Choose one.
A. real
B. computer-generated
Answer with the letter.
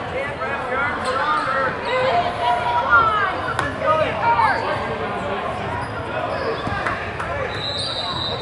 A